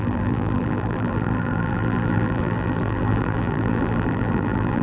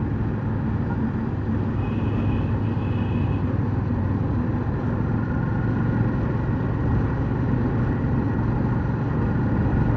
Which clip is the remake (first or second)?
first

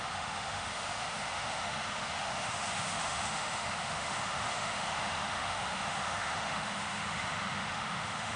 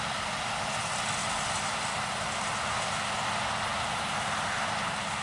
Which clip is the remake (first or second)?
first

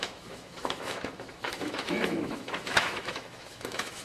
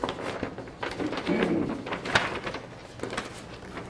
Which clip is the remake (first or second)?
first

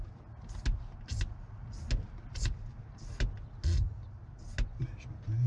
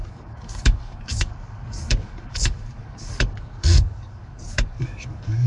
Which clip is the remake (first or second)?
second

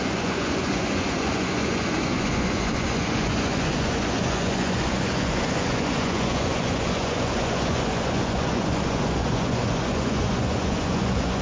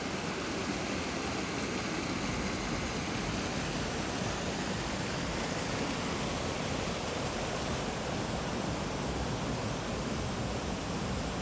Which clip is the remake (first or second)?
first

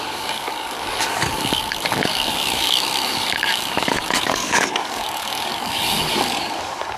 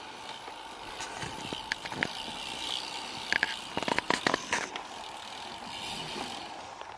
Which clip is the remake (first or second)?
first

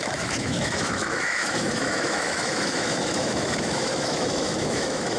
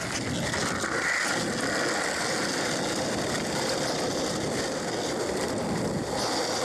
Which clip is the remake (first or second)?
first